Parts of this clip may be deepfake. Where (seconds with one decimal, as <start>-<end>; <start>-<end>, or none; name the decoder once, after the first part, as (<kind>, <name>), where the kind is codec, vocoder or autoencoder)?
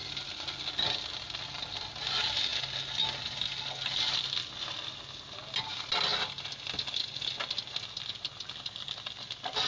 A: none